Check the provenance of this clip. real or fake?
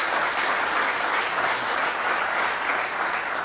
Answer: real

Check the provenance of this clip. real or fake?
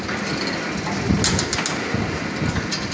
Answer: real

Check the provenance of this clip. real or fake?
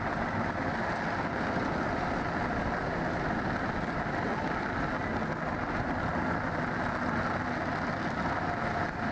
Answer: real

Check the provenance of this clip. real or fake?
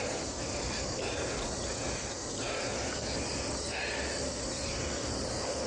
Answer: real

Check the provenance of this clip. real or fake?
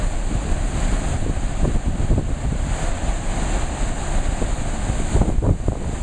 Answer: real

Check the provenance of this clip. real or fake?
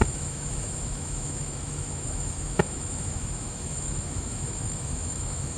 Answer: fake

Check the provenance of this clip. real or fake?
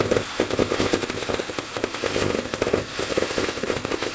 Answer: fake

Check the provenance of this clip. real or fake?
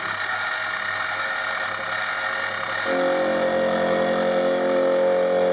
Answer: real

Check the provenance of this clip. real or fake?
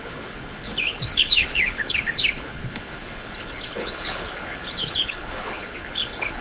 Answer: fake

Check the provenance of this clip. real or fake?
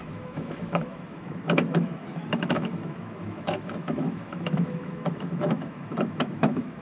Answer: fake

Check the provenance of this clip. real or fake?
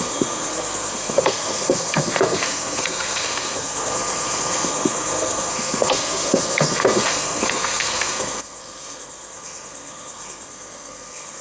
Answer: fake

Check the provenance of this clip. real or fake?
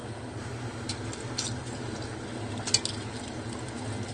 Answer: real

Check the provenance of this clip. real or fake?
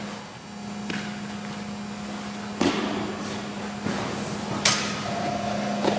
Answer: real